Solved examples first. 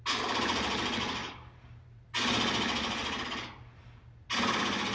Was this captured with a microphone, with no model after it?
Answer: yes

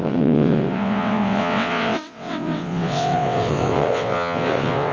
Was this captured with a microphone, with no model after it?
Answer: no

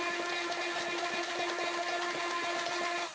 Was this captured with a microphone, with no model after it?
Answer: yes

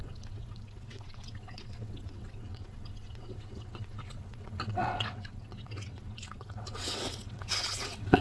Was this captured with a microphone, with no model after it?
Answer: no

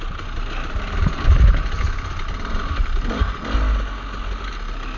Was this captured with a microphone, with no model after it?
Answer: yes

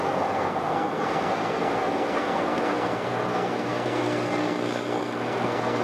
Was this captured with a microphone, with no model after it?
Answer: no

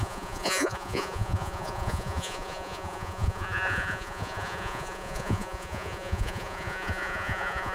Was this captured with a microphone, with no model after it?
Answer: no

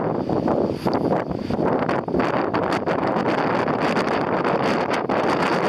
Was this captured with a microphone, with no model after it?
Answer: yes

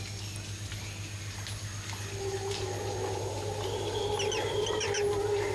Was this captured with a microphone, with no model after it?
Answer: yes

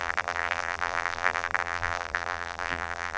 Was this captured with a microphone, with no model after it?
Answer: no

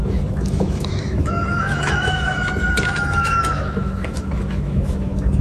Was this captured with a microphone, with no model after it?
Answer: no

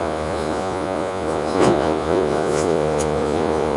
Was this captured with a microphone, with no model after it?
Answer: no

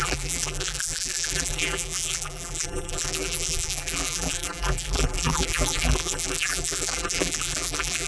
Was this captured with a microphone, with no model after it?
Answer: no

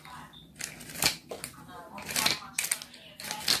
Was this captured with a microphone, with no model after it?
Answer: yes